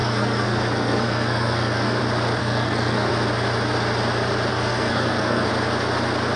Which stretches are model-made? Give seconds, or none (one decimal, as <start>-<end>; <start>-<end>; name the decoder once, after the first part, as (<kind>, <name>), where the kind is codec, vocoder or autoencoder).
0.0-2.0 (codec, SNAC); 2.4-3.1; 4.5-5.5